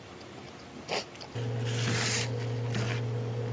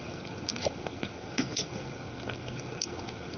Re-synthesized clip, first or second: second